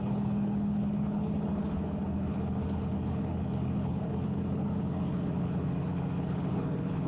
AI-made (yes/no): yes